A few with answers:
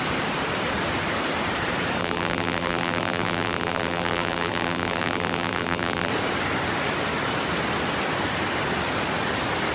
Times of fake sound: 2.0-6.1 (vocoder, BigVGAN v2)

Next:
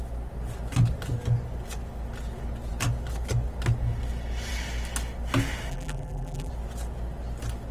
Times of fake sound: 5.7-6.5 (vocoder, BigVGAN v2)

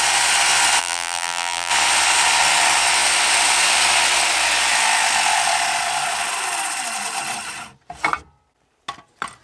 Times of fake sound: 0.8-1.7 (vocoder, BigVGAN v2)

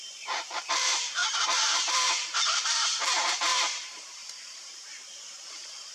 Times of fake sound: 0.0-5.9 (vocoder, BigVGAN v2)

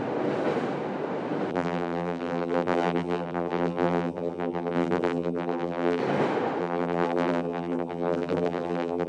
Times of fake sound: 1.5-6.0 (vocoder, BigVGAN v2); 6.6-9.1

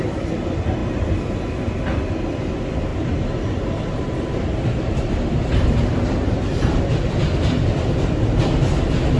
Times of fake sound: 2.9-6.8 (vocoder, BigVGAN v2)

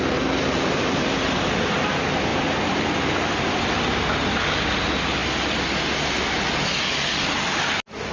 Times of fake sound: 2.3-3.9 (vocoder, BigVGAN v2)

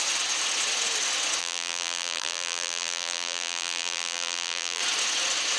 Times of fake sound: 1.4-4.8 (vocoder, BigVGAN v2)